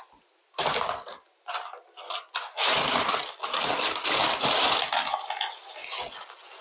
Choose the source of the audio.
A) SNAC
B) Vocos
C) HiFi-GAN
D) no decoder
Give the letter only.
D